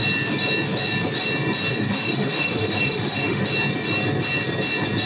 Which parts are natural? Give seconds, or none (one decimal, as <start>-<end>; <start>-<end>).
0.0-1.7; 3.4-5.1